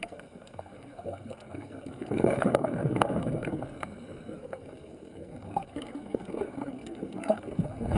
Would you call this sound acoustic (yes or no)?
no